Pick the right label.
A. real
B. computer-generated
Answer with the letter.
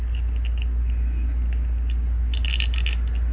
A